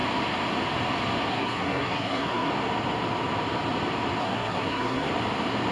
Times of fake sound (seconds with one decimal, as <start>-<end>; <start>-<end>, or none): 1.3-2.5; 4.2-5.1